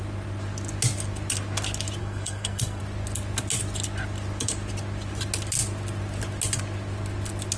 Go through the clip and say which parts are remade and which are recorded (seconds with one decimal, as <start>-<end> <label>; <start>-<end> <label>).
0.0-2.0 recorded; 2.0-2.8 remade; 2.8-7.6 recorded